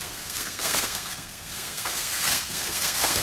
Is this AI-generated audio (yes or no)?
yes